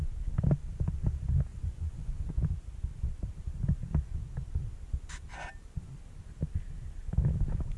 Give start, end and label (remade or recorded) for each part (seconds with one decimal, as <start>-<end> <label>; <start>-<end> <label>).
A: 0.0-1.5 recorded; 1.5-2.3 remade; 2.3-7.8 recorded